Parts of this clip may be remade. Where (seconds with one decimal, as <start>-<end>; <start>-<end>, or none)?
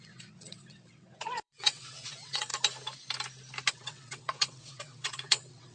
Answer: 0.0-2.5; 3.7-5.7